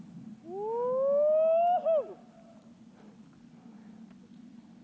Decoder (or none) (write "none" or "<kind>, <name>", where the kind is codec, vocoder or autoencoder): none